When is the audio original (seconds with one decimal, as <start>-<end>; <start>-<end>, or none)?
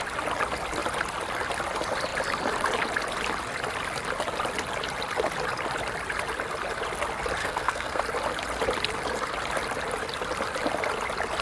0.0-7.4; 8.0-11.4